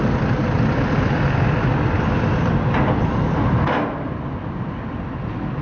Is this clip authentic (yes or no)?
yes